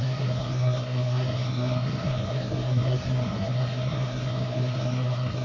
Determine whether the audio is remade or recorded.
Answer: remade